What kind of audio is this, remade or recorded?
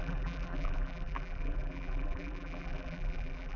remade